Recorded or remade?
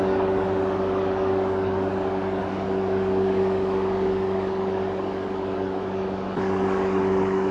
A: remade